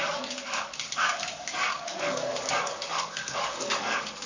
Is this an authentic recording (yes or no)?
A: no